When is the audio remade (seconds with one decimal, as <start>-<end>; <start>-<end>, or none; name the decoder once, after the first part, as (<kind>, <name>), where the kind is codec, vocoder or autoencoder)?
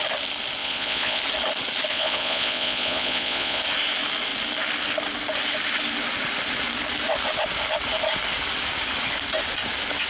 0.6-1.2 (vocoder, Vocos); 1.9-3.6